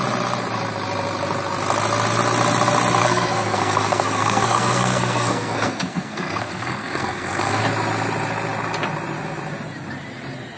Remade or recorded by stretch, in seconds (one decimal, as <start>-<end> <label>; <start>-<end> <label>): 0.0-3.0 recorded; 3.0-7.6 remade; 7.6-10.6 recorded